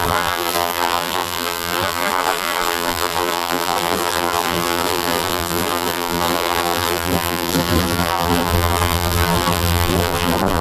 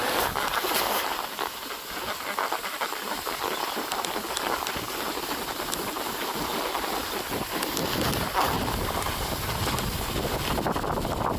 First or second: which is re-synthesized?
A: first